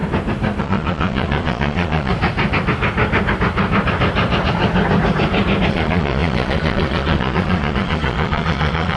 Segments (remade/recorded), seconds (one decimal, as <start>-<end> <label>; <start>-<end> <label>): 0.0-0.6 recorded; 0.6-2.1 remade; 2.1-5.7 recorded; 5.7-9.0 remade